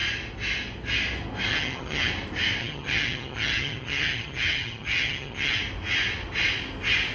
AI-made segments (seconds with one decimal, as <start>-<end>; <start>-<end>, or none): 1.5-2.1; 2.6-5.6